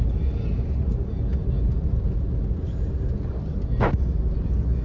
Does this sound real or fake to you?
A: real